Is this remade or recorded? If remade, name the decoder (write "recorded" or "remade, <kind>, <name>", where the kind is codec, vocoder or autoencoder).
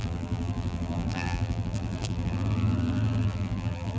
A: remade, vocoder, BigVGAN v2